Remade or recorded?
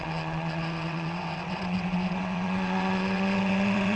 remade